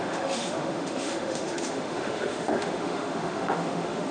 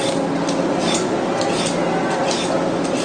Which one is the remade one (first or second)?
first